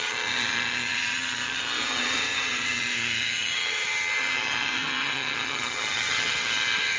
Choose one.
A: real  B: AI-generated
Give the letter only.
B